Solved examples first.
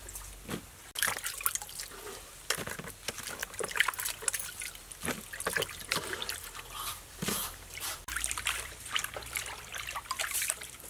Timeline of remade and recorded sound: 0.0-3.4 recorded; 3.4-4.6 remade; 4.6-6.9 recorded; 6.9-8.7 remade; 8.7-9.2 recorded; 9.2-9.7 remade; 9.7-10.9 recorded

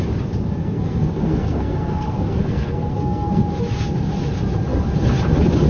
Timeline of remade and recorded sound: 0.0-0.6 recorded; 0.6-3.4 remade; 3.4-5.7 recorded

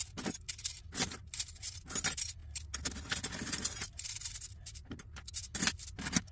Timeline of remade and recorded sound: 0.0-6.3 recorded

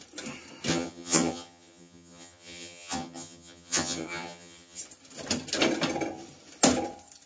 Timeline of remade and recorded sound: 0.0-0.7 recorded; 0.7-4.8 remade; 4.8-7.3 recorded

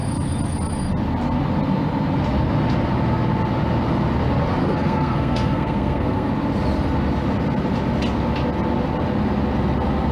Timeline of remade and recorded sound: 0.0-4.6 recorded; 4.6-6.3 remade; 6.3-10.1 recorded

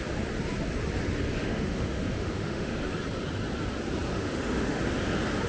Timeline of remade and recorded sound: 0.0-1.4 recorded; 1.4-2.9 remade; 2.9-4.1 recorded; 4.1-4.8 remade; 4.8-5.5 recorded

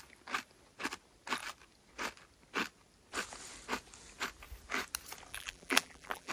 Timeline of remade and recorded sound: 0.0-5.3 recorded; 5.3-6.3 remade

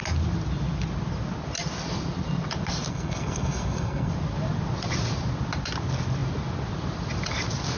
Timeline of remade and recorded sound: 0.0-2.9 recorded; 2.9-4.1 remade; 4.1-7.8 recorded